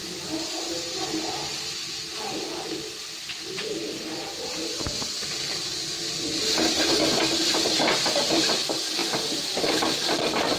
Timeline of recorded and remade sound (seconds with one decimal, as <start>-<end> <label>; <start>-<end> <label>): 0.0-3.3 recorded; 3.3-10.6 remade